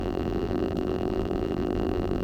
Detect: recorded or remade remade